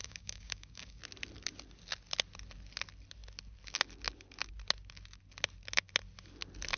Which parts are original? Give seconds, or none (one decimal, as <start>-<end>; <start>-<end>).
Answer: 1.0-6.8